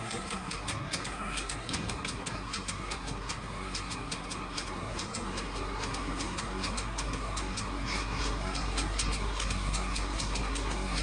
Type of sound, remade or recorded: remade